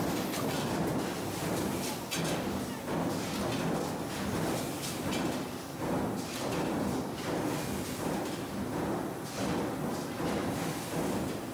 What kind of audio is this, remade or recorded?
recorded